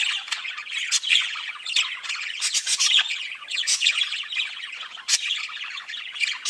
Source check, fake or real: fake